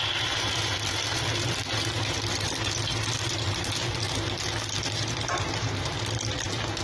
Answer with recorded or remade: recorded